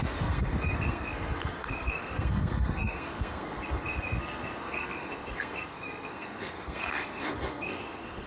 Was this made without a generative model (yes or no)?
no